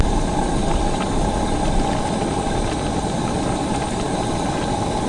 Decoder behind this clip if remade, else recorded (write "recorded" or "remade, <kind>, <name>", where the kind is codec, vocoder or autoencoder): recorded